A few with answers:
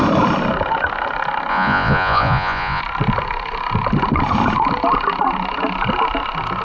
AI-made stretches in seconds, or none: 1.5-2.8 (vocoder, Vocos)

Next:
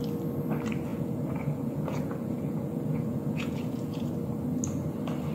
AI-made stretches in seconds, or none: 0.9-4.1 (vocoder, Vocos)

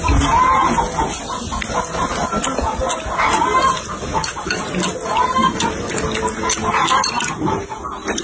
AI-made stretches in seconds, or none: none

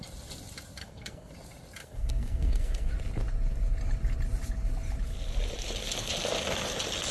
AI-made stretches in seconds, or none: 0.8-1.3 (codec, SNAC); 1.8-2.9